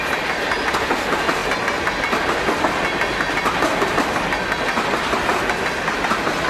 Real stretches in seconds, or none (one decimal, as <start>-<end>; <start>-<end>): 0.0-6.5